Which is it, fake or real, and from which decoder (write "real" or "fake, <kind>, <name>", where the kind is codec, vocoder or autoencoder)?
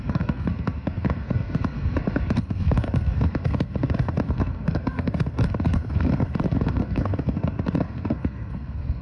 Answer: fake, codec, SNAC